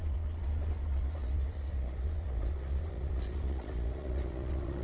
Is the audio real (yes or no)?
no